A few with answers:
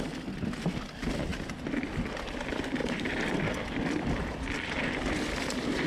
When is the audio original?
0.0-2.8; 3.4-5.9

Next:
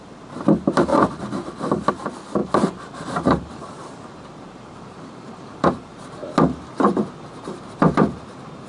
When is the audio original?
6.2-7.9

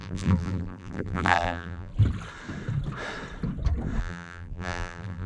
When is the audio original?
1.9-4.0